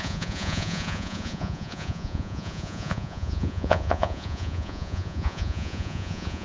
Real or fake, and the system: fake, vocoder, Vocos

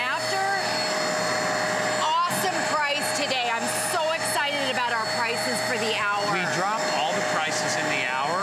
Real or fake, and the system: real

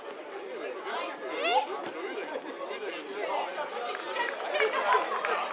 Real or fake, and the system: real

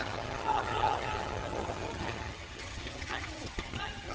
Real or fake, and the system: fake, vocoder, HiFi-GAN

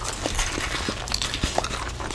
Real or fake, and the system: real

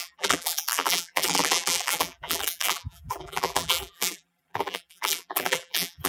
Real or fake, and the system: fake, vocoder, BigVGAN v2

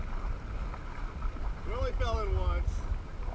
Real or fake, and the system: real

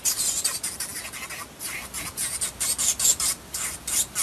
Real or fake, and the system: real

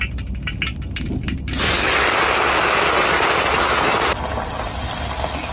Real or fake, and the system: real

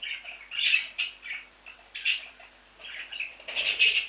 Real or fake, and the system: real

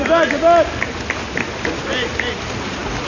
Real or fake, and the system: real